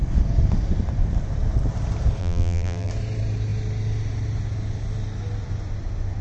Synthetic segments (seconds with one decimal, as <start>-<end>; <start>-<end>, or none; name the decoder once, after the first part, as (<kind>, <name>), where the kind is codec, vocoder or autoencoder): 2.2-2.9 (vocoder, BigVGAN v2)

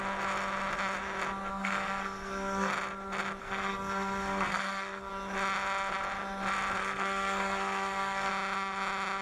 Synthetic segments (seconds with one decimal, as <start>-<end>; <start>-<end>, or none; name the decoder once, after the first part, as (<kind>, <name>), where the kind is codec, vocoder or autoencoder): 1.5-2.7 (codec, SNAC); 3.4-5.1; 6.8-8.3

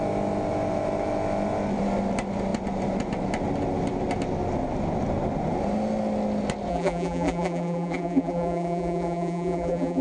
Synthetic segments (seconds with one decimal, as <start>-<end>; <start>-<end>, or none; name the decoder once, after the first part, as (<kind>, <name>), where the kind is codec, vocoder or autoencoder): 6.7-10.0 (vocoder, BigVGAN v2)